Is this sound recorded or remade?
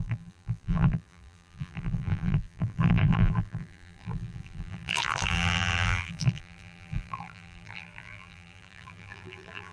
remade